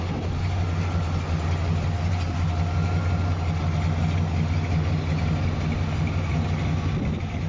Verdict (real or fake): real